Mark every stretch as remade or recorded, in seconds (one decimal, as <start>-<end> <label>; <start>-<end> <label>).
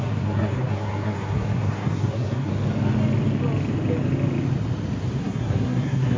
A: 0.0-2.5 remade; 2.5-5.2 recorded; 5.2-6.2 remade